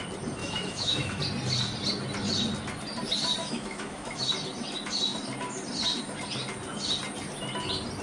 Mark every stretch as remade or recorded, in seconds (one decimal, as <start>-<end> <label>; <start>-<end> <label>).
0.0-0.4 recorded; 0.4-1.2 remade; 1.2-3.4 recorded; 3.4-4.3 remade; 4.3-8.0 recorded